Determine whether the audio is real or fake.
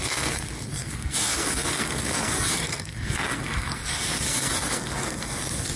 fake